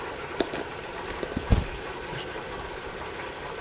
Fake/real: fake